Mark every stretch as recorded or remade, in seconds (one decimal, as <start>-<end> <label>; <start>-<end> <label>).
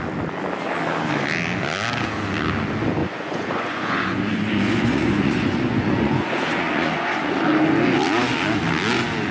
0.0-3.0 recorded; 3.0-7.4 remade; 7.4-9.3 recorded